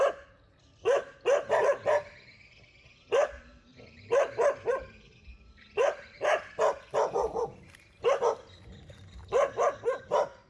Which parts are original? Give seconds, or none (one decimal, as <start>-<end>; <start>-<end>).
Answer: 0.0-3.7; 5.5-7.5; 8.1-10.5